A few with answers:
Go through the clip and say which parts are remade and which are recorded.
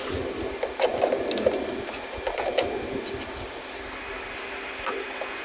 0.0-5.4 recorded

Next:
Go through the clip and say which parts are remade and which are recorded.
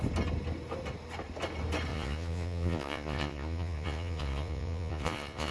0.0-1.9 recorded; 1.9-5.5 remade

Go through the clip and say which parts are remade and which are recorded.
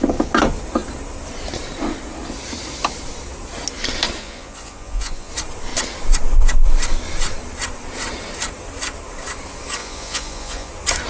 0.0-4.2 recorded; 4.2-5.3 remade; 5.3-9.8 recorded; 9.8-10.7 remade; 10.7-11.1 recorded